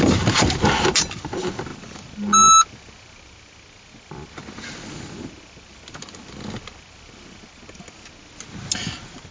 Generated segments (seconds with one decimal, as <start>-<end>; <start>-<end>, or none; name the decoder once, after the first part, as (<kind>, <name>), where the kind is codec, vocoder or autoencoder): none